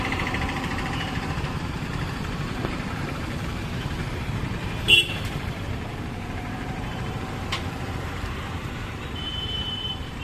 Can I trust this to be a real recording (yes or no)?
no